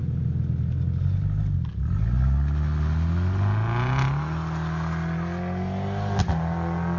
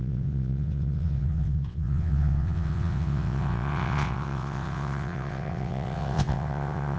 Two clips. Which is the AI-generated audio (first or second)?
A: second